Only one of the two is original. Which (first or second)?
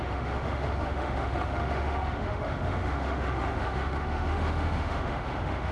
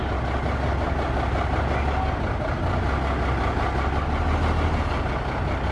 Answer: second